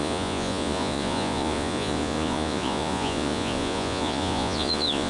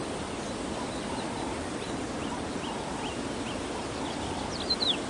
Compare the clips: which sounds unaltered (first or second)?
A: second